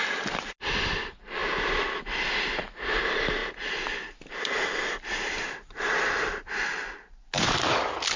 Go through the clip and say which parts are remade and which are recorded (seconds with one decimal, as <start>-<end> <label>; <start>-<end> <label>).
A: 0.0-8.2 recorded